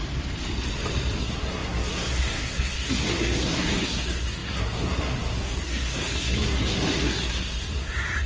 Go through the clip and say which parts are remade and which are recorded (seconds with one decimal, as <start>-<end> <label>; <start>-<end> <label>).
0.0-1.2 recorded; 1.2-8.3 remade